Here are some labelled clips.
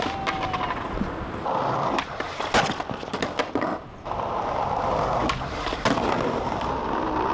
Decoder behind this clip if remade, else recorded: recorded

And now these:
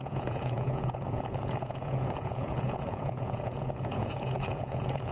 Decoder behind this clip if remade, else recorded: remade, vocoder, Vocos